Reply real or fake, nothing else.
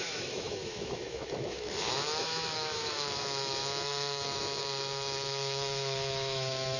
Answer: fake